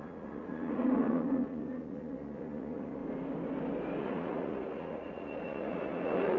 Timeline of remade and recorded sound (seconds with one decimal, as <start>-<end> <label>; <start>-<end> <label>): 0.0-3.0 remade; 3.0-4.0 recorded; 4.0-6.4 remade